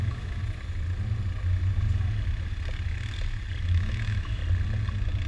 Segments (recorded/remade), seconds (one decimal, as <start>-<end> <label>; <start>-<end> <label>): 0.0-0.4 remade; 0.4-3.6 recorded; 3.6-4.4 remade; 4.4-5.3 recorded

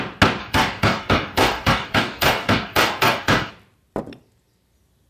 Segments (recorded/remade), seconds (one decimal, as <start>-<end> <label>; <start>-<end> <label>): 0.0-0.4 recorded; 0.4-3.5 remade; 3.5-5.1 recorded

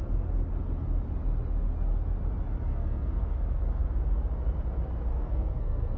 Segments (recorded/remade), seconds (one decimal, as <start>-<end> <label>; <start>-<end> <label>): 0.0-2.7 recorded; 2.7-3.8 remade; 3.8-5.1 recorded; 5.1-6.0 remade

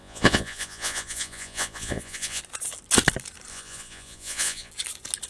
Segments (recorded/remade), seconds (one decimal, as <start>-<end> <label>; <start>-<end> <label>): 0.0-2.4 remade; 2.4-3.5 recorded; 3.5-4.7 remade; 4.7-5.3 recorded

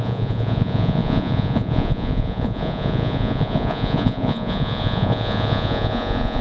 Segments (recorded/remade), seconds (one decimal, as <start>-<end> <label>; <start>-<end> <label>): 0.0-6.4 remade

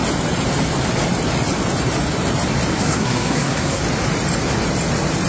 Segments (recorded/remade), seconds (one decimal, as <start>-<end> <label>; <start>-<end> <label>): 0.0-2.8 recorded; 2.8-3.8 remade; 3.8-5.3 recorded

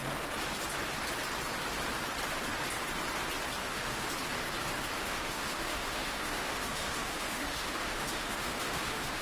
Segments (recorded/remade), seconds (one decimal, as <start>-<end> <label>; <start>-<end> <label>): 0.0-3.6 recorded; 3.6-4.1 remade; 4.1-5.0 recorded; 5.0-9.2 remade